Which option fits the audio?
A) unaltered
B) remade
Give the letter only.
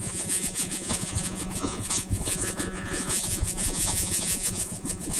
B